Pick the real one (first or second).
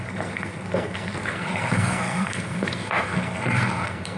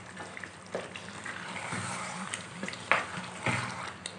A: second